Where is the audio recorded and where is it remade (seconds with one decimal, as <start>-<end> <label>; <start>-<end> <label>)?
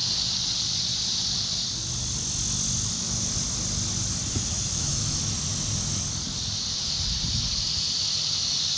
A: 0.0-4.3 recorded; 4.3-5.0 remade; 5.0-8.8 recorded